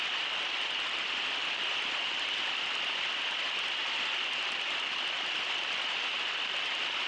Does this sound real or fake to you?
real